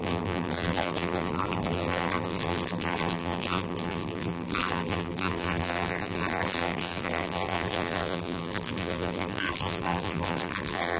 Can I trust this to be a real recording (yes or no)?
no